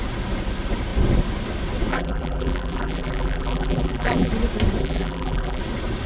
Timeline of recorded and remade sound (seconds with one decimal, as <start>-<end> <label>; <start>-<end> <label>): 0.0-1.9 recorded; 1.9-4.3 remade; 4.3-4.8 recorded; 4.8-5.6 remade; 5.6-6.1 recorded